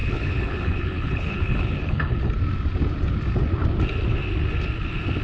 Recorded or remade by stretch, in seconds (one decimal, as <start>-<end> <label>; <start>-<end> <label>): 0.0-2.3 remade; 2.3-5.2 recorded